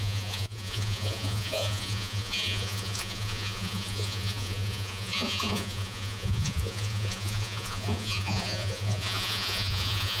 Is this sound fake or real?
fake